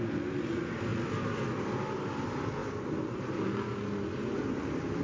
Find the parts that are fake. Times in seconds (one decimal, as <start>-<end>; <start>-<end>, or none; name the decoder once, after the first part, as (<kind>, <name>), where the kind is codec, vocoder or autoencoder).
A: none